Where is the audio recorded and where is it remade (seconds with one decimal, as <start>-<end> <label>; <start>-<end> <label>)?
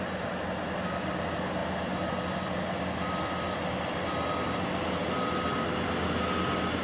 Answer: 0.0-6.8 recorded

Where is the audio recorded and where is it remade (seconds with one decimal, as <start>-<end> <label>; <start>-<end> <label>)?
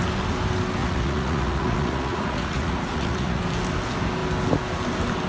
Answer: 0.0-0.8 recorded; 0.8-3.4 remade; 3.4-5.3 recorded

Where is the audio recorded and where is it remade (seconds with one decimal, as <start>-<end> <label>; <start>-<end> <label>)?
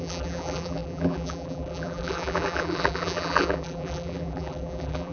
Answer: 0.0-5.1 remade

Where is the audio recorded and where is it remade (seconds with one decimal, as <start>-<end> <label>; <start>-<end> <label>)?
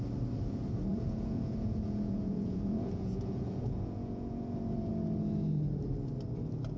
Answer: 0.0-0.9 recorded; 0.9-4.9 remade; 4.9-6.8 recorded